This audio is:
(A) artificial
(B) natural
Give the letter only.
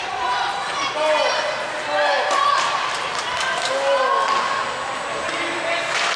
B